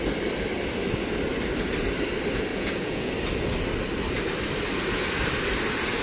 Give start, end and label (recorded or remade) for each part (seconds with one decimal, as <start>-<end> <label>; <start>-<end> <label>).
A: 0.0-2.5 recorded; 2.5-3.1 remade; 3.1-6.0 recorded